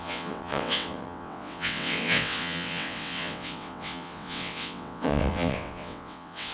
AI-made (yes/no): yes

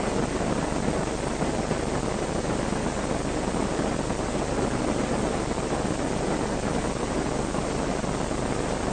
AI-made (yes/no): no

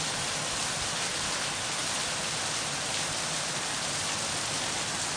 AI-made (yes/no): no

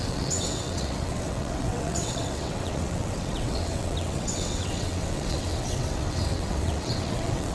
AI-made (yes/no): yes